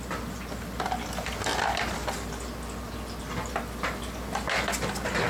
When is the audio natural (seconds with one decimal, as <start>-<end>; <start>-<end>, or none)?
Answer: 0.0-5.3

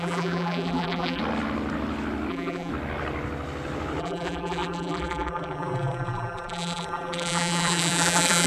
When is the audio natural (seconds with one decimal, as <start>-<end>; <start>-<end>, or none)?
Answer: 1.2-2.3; 2.7-4.0

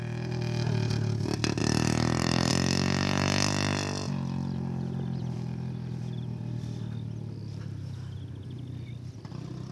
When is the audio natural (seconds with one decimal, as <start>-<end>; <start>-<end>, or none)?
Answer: 0.0-1.6; 2.5-9.7

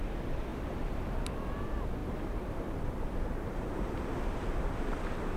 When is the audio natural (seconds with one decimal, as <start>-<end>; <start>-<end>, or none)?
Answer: 0.0-0.5; 1.5-2.0